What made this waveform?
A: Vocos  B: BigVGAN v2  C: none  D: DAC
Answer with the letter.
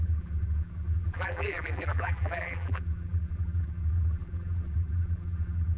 B